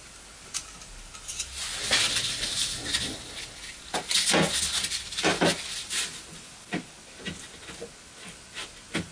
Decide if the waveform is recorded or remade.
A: recorded